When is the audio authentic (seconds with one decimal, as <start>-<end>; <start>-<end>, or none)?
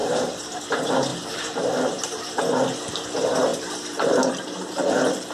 0.6-1.1; 2.4-3.5; 4.3-5.3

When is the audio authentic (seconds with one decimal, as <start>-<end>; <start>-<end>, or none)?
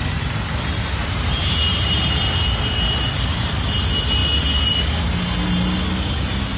0.0-1.0; 3.6-6.6